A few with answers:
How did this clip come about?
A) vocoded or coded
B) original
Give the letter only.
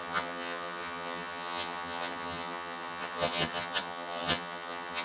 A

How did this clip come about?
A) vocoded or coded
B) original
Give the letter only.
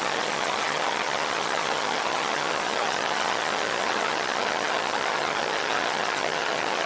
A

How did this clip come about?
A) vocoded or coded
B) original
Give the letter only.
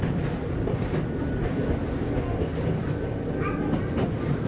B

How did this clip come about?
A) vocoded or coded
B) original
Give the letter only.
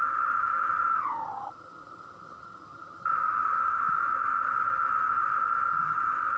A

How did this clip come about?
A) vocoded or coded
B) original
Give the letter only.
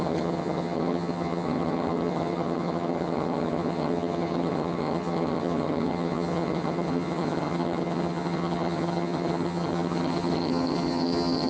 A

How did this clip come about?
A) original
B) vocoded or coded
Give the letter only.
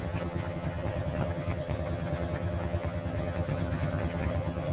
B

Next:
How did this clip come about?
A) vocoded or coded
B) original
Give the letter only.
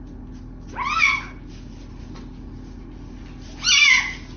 B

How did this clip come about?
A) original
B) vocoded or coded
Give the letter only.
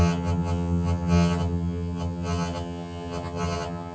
B